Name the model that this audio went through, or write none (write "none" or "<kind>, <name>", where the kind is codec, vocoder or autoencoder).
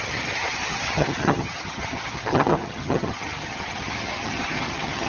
vocoder, HiFi-GAN